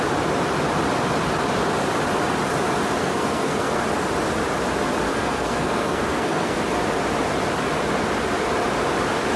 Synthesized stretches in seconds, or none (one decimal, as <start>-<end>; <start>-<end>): 3.0-3.8; 5.1-6.6